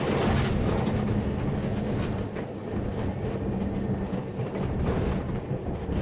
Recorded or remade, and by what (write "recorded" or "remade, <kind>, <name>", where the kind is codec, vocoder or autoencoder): recorded